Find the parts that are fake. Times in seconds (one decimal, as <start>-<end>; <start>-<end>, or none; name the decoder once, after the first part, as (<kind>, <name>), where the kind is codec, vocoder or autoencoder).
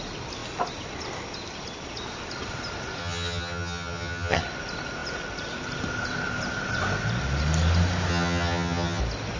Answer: 3.0-4.4 (vocoder, HiFi-GAN); 8.1-9.0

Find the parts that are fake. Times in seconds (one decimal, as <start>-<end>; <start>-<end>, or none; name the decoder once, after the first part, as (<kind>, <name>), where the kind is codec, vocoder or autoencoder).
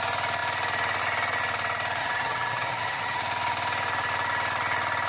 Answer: 2.0-3.2 (vocoder, HiFi-GAN)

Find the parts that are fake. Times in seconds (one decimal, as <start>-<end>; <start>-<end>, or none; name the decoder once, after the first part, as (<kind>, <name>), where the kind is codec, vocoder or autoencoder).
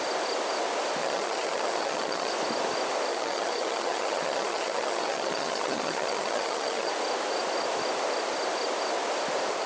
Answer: 1.0-2.3 (vocoder, HiFi-GAN); 3.1-6.9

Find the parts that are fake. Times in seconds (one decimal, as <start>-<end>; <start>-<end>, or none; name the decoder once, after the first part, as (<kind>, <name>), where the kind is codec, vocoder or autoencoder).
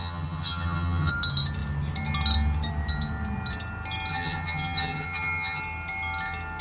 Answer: 0.0-1.1 (vocoder, HiFi-GAN); 4.1-5.6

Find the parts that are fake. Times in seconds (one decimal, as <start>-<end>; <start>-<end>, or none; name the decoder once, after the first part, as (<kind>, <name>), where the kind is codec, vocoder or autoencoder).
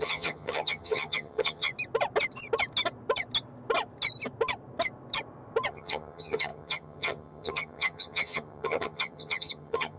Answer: 0.0-1.7 (vocoder, HiFi-GAN); 5.7-10.0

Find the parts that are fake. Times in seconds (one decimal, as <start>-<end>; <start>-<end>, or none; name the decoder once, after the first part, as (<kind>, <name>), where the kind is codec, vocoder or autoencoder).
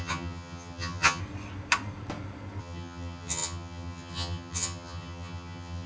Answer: 0.0-1.2 (vocoder, HiFi-GAN); 2.6-5.9